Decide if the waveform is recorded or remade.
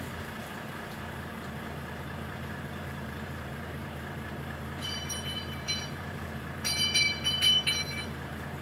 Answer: remade